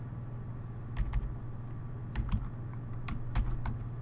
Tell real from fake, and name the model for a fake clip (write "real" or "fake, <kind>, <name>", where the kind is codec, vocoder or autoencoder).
real